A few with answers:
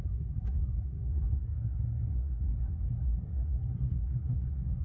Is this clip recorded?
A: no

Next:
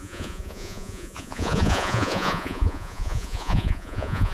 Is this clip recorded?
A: no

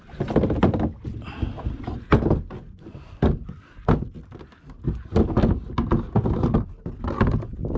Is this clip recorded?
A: yes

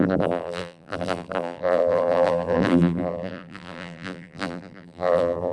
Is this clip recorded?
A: no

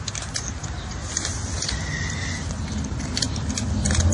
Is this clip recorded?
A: yes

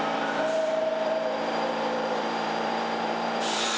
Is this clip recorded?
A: no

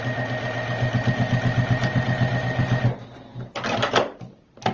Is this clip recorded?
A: yes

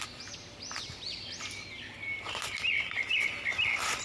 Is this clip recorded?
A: yes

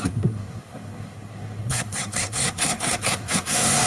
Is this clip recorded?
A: no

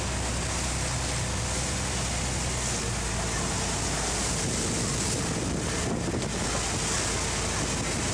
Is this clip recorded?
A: yes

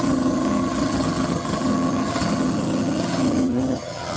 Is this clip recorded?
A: no